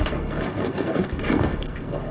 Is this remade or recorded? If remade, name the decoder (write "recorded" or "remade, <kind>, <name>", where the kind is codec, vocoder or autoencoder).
remade, codec, SNAC